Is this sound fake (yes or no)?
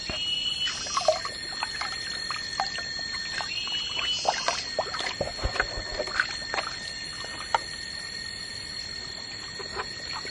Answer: no